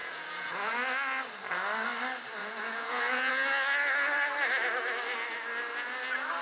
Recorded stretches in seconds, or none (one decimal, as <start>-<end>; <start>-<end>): 0.7-2.4; 3.3-6.4